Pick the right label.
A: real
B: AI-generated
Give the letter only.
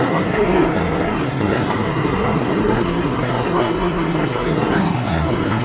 B